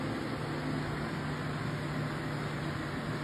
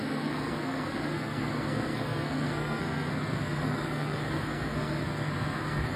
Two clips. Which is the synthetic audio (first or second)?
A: second